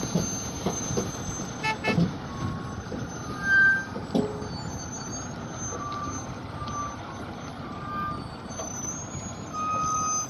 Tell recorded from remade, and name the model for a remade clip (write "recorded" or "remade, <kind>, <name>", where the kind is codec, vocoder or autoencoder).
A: recorded